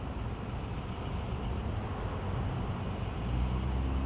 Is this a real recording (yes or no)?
yes